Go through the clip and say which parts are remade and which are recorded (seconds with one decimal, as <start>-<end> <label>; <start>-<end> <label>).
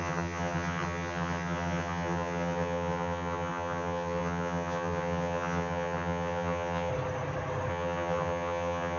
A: 0.0-6.9 remade; 6.9-7.7 recorded; 7.7-9.0 remade